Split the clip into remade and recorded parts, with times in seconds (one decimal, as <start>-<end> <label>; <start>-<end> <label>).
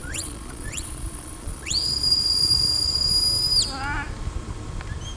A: 0.0-3.1 remade; 3.1-5.2 recorded